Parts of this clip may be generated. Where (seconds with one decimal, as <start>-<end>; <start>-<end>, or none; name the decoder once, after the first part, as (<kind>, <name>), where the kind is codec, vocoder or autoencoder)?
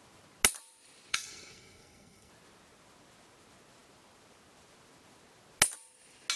1.1-2.3 (codec, SNAC)